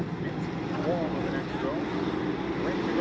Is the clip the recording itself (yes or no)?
yes